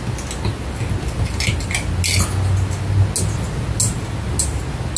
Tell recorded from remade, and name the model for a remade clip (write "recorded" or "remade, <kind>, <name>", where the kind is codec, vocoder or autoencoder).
recorded